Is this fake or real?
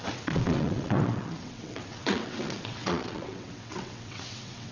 fake